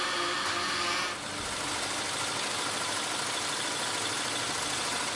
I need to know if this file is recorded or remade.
recorded